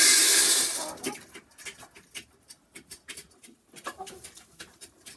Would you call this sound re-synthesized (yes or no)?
no